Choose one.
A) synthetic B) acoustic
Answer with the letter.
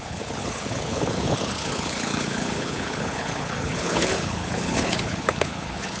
A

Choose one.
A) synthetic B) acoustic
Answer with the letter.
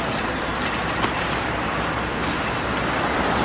B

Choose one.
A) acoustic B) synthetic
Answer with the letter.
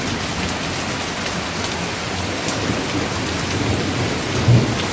A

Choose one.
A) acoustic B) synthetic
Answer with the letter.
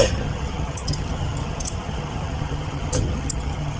B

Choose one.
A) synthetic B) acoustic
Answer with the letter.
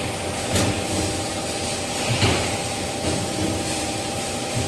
B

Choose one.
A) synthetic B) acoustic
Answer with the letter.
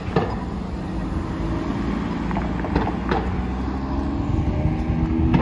B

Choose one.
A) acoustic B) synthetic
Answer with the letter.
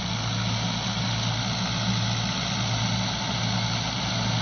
A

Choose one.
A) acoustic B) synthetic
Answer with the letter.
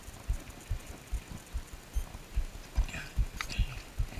A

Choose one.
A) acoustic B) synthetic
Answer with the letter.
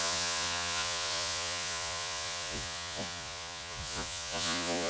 B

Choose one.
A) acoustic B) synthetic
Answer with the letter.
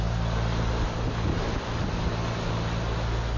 A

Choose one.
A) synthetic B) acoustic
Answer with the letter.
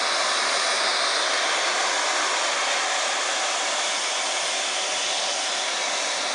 B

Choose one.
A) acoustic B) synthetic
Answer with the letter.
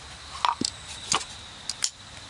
A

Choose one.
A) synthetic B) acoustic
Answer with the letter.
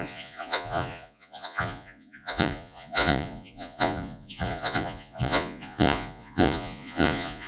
A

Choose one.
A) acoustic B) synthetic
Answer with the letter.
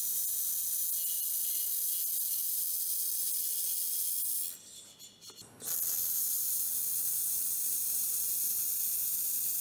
A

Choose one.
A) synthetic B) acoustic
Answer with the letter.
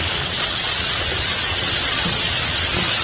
A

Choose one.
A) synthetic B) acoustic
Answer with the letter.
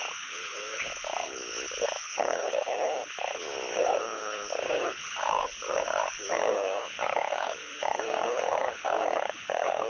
A